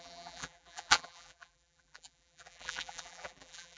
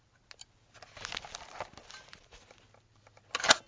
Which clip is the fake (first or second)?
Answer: first